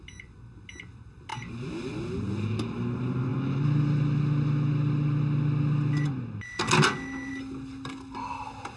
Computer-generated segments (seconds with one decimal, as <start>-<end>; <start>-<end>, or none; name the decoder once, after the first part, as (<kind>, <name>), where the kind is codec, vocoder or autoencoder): none